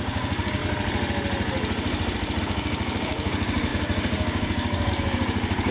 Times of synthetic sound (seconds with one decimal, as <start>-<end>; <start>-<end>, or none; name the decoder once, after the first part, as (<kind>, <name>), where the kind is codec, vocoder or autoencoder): 0.0-0.6 (codec, DAC); 2.4-5.7